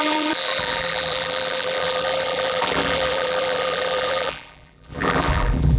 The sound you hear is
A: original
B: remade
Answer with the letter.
B